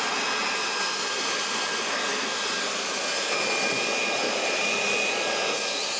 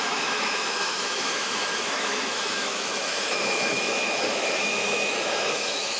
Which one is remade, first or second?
second